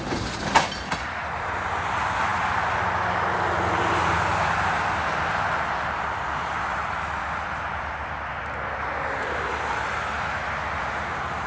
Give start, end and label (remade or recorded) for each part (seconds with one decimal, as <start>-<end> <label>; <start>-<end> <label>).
0.0-11.5 recorded